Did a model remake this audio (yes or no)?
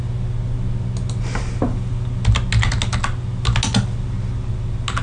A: no